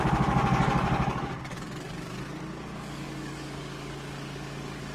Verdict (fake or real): fake